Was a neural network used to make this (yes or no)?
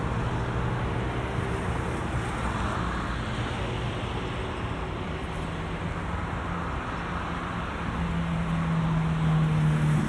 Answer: no